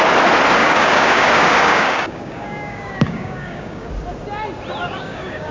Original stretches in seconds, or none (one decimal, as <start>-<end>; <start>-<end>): 0.0-0.6; 3.9-4.8